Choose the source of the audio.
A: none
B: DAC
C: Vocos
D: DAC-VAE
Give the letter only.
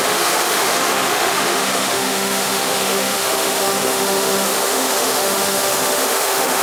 D